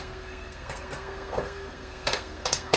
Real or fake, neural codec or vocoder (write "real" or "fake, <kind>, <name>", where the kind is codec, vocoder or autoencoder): fake, codec, SNAC